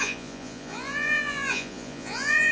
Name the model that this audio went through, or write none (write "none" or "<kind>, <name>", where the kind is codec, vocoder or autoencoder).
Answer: vocoder, Vocos